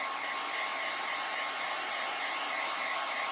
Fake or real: real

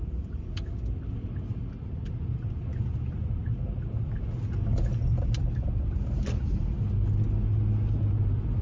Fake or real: real